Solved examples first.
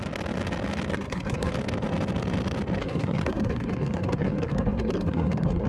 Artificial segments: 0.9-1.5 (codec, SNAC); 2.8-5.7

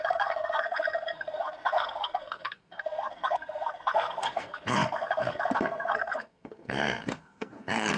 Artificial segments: 0.0-8.0 (codec, SNAC)

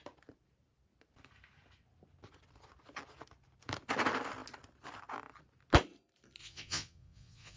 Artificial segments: 6.4-7.6 (vocoder, Vocos)

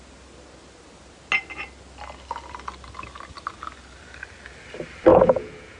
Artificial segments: 5.1-5.8 (vocoder, Vocos)